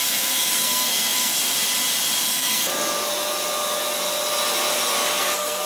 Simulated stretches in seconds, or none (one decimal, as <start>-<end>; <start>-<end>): 0.0-1.4; 2.2-2.7; 5.2-5.7